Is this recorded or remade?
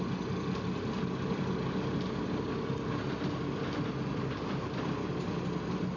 recorded